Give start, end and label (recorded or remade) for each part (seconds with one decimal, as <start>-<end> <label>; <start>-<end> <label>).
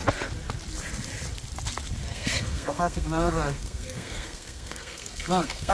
0.0-2.0 recorded; 2.0-5.7 remade